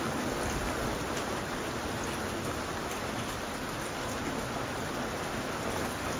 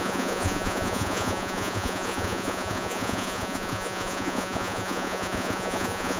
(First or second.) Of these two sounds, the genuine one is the first